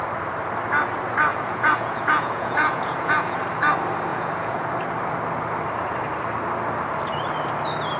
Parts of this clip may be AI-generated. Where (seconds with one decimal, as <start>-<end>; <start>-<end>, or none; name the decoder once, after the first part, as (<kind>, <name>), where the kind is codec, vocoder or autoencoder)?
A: 1.3-3.4 (vocoder, Vocos); 4.1-4.7